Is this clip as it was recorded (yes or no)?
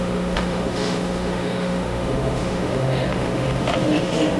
no